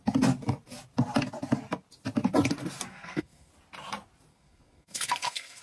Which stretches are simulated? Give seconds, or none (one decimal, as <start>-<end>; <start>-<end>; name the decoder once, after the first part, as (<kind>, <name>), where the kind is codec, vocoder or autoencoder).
2.9-3.5 (codec, SNAC); 4.3-5.6

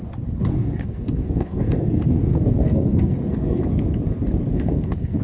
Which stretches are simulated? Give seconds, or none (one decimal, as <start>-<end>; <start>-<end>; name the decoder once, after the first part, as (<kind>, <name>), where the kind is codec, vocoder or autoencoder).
0.5-3.6 (codec, SNAC); 4.5-5.2

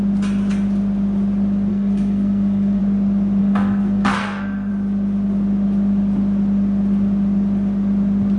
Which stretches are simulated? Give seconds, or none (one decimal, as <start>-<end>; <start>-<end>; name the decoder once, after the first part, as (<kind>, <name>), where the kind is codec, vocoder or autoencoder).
1.7-2.8 (codec, SNAC); 3.4-4.7

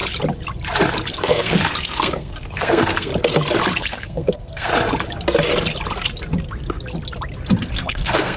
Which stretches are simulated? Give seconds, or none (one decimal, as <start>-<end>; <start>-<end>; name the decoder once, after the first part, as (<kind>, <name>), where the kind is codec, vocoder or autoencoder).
1.1-3.1 (codec, SNAC); 3.8-4.7; 7.7-8.4

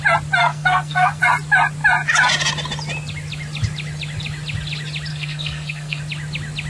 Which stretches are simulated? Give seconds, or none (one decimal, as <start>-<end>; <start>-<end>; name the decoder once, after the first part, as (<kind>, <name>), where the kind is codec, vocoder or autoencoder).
0.4-1.2 (codec, SNAC); 5.1-6.0

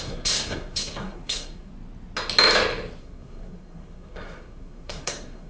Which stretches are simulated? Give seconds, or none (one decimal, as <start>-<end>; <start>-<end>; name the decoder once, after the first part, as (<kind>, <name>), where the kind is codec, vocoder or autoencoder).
0.0-1.7 (codec, SNAC); 3.0-5.5

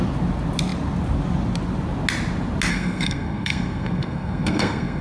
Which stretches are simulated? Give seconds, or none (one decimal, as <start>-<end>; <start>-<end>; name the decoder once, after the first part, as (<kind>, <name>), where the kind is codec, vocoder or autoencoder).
2.7-5.0 (codec, SNAC)